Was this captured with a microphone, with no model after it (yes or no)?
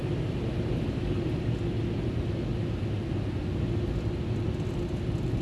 yes